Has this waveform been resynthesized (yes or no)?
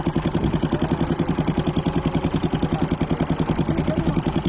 no